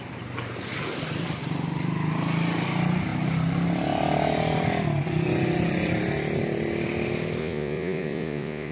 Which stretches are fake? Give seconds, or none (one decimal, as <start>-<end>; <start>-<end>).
7.4-8.7